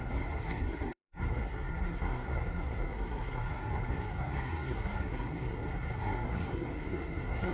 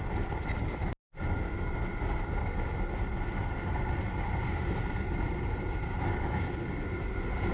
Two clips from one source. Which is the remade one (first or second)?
first